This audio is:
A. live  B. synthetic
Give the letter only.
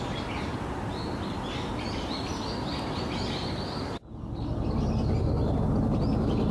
A